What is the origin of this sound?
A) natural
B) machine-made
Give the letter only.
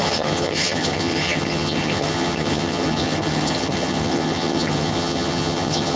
B